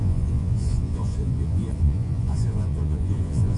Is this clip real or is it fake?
fake